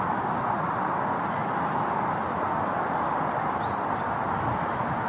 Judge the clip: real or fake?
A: real